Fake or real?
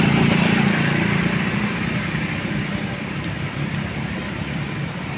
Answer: real